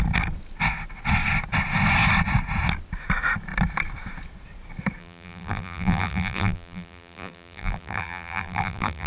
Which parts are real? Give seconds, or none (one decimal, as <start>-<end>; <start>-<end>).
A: 0.0-5.0